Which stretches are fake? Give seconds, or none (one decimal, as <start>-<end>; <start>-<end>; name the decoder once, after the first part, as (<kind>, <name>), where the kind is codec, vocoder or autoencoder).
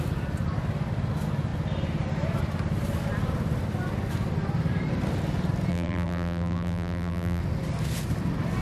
5.7-7.4 (vocoder, BigVGAN v2)